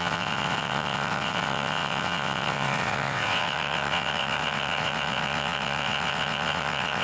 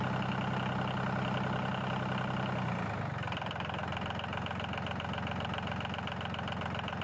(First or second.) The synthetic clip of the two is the first